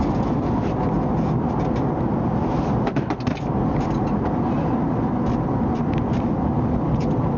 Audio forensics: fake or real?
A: real